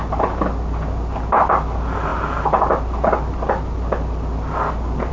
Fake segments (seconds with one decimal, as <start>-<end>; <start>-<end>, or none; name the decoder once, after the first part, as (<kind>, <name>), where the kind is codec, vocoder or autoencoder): none